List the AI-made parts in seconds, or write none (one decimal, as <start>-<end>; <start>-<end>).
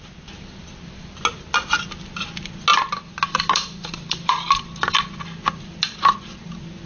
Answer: none